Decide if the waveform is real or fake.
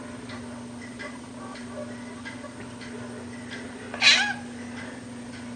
real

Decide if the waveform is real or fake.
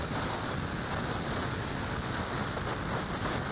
real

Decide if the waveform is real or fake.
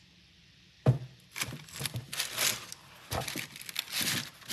real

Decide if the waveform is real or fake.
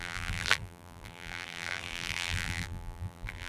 fake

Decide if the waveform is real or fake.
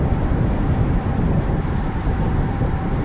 real